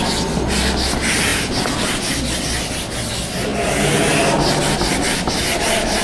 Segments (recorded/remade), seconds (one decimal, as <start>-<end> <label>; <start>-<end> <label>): 0.0-6.0 recorded